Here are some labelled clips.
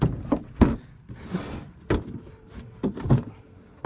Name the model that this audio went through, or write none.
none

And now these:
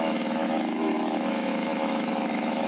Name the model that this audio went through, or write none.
autoencoder, DAC-VAE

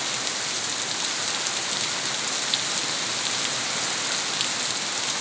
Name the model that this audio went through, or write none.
none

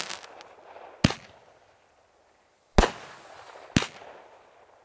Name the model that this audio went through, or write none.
none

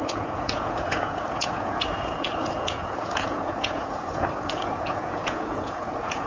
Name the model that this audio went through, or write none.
vocoder, Vocos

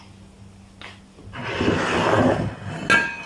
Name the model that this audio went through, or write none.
none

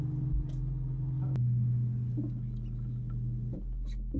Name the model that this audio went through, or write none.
none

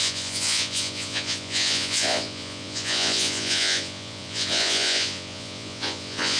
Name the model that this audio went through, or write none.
vocoder, Vocos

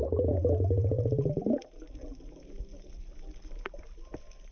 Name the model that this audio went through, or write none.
none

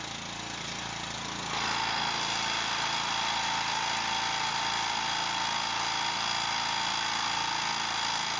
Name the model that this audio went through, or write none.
none